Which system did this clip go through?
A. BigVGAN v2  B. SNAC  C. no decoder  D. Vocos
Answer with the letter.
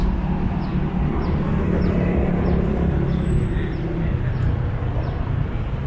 C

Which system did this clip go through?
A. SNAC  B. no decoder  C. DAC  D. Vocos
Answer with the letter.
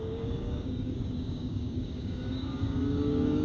C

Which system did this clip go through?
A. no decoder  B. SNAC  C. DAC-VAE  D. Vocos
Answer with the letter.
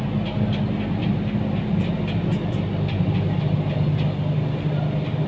A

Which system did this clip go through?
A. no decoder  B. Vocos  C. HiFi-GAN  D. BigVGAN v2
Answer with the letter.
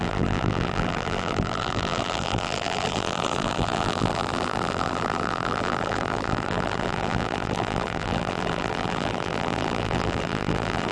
D